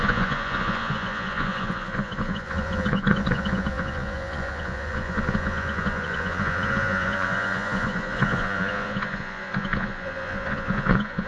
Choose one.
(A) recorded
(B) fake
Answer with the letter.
B